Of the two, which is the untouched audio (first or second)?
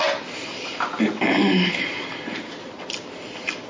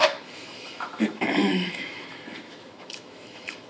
first